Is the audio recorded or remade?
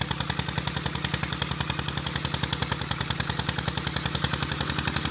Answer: recorded